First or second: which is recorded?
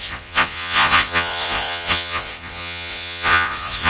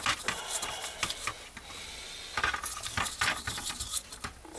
second